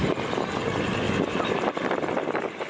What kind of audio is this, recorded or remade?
recorded